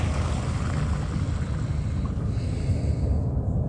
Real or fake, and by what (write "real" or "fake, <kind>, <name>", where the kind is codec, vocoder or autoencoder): real